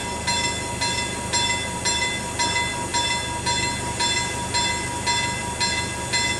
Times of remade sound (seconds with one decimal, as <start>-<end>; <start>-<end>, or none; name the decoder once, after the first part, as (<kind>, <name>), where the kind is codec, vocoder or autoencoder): none